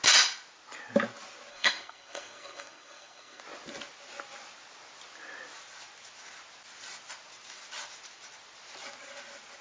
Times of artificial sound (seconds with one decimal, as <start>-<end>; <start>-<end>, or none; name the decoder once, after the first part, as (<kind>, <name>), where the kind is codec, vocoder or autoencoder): 1.5-3.4 (codec, SNAC)